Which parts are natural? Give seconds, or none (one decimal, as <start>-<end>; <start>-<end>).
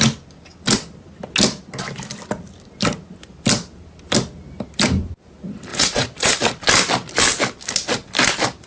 0.0-5.7; 6.3-8.7